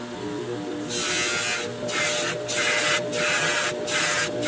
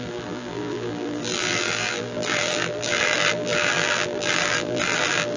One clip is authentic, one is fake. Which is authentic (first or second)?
first